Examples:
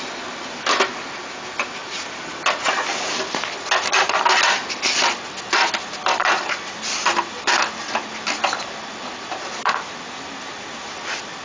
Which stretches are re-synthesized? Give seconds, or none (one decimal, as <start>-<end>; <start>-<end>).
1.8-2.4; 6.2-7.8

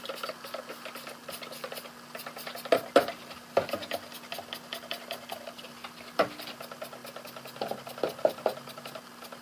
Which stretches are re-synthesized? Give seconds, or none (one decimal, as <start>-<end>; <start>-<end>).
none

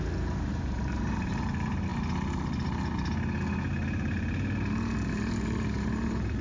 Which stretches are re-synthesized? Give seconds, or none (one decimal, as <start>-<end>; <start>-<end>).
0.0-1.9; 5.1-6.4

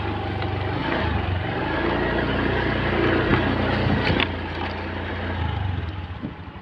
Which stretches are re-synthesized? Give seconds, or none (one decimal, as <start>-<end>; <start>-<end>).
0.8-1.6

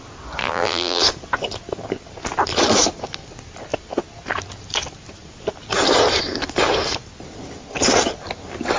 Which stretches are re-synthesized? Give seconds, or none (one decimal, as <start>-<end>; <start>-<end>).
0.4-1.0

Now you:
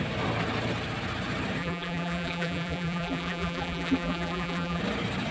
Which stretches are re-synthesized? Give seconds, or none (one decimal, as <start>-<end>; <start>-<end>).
1.6-4.8

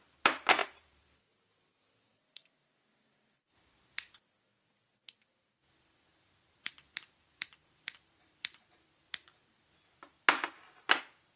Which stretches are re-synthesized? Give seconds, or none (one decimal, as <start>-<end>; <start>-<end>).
0.6-4.2; 6.1-8.9

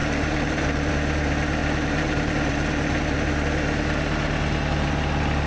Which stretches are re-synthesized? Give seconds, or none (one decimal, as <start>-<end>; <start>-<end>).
0.0-0.9; 1.6-3.3